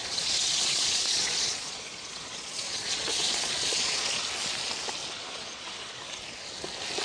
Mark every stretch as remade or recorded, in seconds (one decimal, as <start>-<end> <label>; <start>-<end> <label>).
0.0-4.2 remade; 4.2-5.0 recorded; 5.0-6.0 remade; 6.0-7.0 recorded